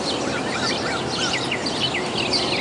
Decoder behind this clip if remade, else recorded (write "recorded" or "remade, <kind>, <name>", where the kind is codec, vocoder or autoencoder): recorded